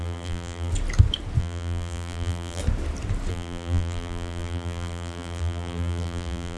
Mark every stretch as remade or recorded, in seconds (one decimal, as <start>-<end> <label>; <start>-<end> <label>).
0.0-0.7 remade; 0.7-1.4 recorded; 1.4-2.6 remade; 2.6-3.3 recorded; 3.3-6.6 remade